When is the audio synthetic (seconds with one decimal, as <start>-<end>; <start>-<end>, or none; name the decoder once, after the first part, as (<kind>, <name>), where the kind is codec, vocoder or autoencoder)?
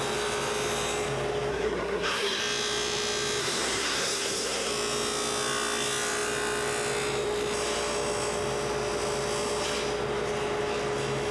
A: 1.5-2.4 (codec, SNAC); 3.4-4.7